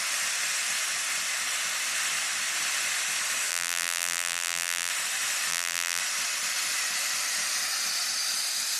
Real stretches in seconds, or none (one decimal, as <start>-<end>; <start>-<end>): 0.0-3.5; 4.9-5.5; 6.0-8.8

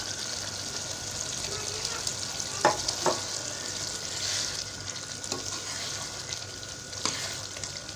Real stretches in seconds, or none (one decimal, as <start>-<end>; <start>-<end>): 0.0-8.0

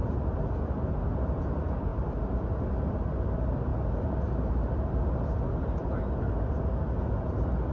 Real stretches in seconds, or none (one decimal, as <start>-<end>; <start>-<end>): 0.0-7.7

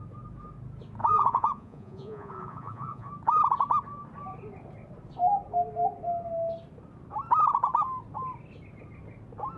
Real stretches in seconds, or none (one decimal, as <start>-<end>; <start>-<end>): 0.0-1.0; 3.1-9.6